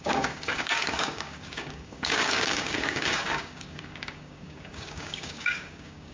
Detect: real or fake fake